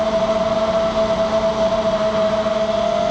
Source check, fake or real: real